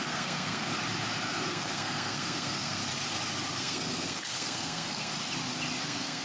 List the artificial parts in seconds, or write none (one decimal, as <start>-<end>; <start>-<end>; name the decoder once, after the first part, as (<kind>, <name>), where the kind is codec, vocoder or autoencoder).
0.0-0.7 (codec, SNAC); 1.5-2.8; 3.6-5.1; 5.8-6.2